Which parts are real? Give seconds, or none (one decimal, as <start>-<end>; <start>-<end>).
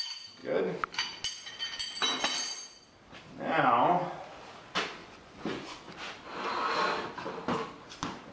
0.0-5.0; 5.9-8.3